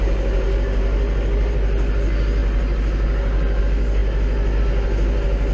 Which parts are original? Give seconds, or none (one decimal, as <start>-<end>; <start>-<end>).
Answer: 0.0-5.5